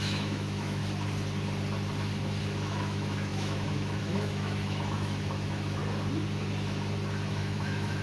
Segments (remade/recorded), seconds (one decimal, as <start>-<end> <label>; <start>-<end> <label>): 0.0-0.8 remade; 0.8-2.4 recorded; 2.4-5.8 remade; 5.8-7.3 recorded; 7.3-8.0 remade